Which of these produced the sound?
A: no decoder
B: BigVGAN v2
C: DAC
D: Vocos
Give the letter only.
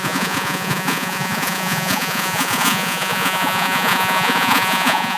D